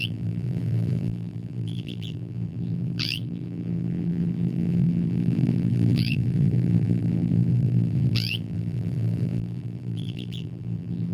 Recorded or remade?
remade